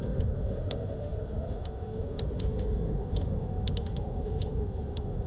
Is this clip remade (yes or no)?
yes